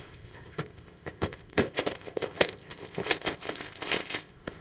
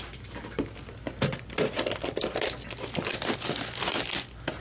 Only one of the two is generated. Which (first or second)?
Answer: first